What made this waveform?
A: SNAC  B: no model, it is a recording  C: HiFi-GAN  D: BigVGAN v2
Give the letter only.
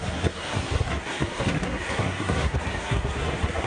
A